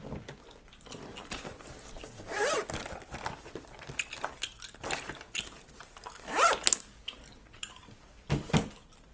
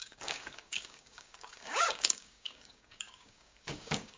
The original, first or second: first